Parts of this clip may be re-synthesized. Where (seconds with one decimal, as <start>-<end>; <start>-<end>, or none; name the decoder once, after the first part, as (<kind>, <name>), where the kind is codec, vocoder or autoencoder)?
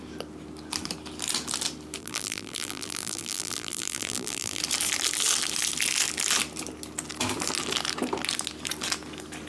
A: 2.0-4.6 (vocoder, BigVGAN v2)